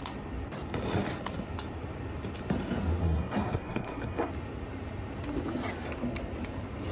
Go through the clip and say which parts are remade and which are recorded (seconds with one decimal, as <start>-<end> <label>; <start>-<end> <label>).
0.0-3.0 recorded; 3.0-4.3 remade; 4.3-6.9 recorded

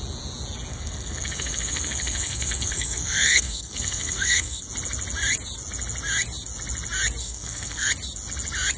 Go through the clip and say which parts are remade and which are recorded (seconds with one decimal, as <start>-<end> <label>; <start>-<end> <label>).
0.0-0.7 recorded; 0.7-4.6 remade; 4.6-7.2 recorded; 7.2-7.9 remade; 7.9-8.8 recorded

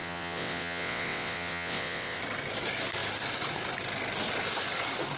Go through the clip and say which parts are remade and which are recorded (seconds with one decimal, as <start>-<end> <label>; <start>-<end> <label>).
0.0-2.2 remade; 2.2-5.2 recorded

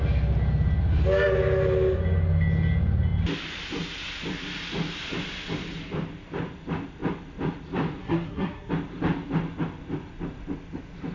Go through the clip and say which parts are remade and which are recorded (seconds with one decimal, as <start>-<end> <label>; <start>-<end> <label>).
0.0-8.0 recorded; 8.0-8.7 remade; 8.7-11.1 recorded

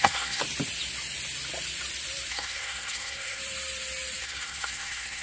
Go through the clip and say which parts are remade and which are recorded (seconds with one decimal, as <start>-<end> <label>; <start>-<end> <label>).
0.0-0.4 remade; 0.4-2.3 recorded; 2.3-3.4 remade; 3.4-4.2 recorded; 4.2-5.2 remade

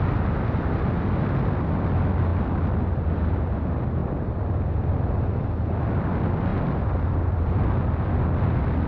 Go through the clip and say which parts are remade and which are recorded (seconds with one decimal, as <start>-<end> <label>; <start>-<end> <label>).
0.0-8.9 recorded

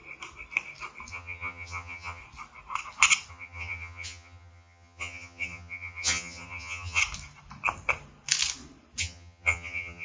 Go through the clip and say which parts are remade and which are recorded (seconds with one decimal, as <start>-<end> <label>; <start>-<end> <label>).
0.0-1.1 recorded; 1.1-2.2 remade; 2.2-3.3 recorded; 3.3-7.0 remade; 7.0-9.0 recorded; 9.0-10.0 remade